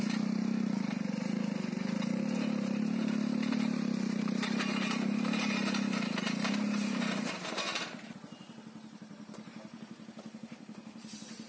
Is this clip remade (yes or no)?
yes